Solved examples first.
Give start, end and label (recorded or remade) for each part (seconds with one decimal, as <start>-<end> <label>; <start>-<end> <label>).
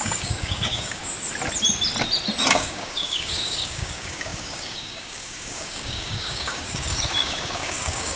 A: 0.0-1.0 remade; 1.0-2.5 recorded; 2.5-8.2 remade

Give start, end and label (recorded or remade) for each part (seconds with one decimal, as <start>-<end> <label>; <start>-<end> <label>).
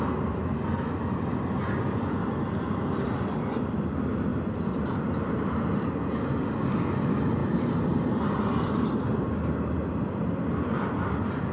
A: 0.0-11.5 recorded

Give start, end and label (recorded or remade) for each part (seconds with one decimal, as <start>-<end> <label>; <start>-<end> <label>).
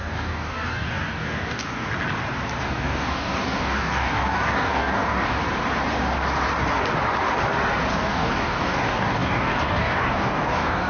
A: 0.0-1.9 remade; 1.9-2.6 recorded; 2.6-5.4 remade; 5.4-7.9 recorded; 7.9-10.9 remade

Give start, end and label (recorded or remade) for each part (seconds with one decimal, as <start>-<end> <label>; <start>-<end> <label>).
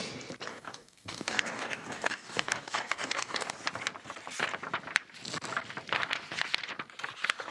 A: 0.0-0.5 recorded; 0.5-3.5 remade; 3.5-7.5 recorded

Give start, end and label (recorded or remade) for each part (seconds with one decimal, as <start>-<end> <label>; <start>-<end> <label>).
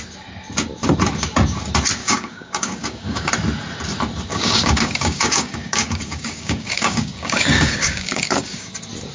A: 0.0-2.0 recorded; 2.0-3.3 remade; 3.3-4.3 recorded; 4.3-8.7 remade; 8.7-9.1 recorded